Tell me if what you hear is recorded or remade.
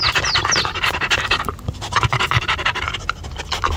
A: recorded